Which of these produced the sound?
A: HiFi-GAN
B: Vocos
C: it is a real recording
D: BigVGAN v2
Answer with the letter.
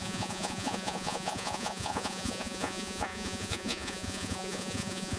B